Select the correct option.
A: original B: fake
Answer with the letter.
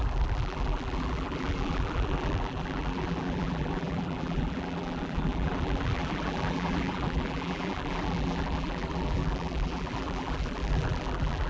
B